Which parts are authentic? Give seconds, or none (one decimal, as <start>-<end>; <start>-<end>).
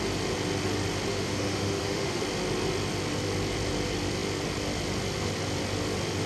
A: 0.0-1.1; 2.2-6.3